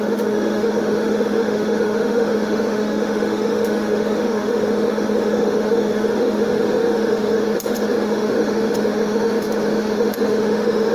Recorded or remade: remade